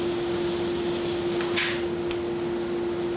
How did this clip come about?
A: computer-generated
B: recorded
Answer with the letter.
B